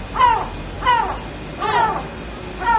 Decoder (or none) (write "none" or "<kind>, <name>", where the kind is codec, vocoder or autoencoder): none